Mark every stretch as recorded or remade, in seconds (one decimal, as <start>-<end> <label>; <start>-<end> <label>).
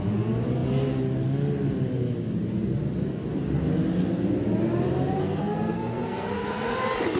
0.0-5.1 recorded; 5.1-6.5 remade; 6.5-7.2 recorded